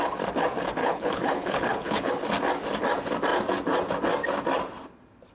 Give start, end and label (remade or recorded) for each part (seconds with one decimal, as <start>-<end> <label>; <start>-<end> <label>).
0.0-0.8 recorded; 0.8-2.1 remade; 2.1-5.3 recorded

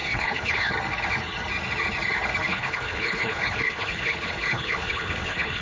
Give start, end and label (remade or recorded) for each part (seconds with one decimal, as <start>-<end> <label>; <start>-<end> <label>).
0.0-0.7 remade; 0.7-2.5 recorded; 2.5-5.6 remade

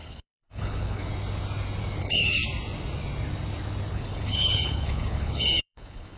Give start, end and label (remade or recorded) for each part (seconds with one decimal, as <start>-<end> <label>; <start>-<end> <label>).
0.0-1.1 remade; 1.1-2.0 recorded; 2.0-2.4 remade; 2.4-3.9 recorded; 3.9-6.2 remade

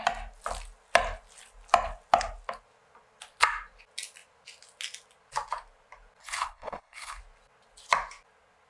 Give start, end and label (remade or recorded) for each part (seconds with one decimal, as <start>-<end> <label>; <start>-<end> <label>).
0.0-6.2 recorded; 6.2-7.2 remade; 7.2-8.7 recorded

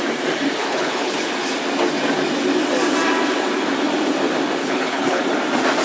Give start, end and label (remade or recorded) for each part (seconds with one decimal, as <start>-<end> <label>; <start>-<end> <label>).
0.0-0.6 recorded; 0.6-1.3 remade; 1.3-4.6 recorded; 4.6-5.2 remade; 5.2-5.8 recorded